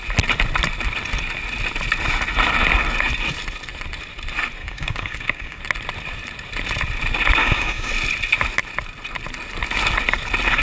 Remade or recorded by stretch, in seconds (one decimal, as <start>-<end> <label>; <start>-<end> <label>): 0.0-4.6 recorded; 4.6-5.6 remade; 5.6-7.4 recorded; 7.4-7.9 remade; 7.9-10.6 recorded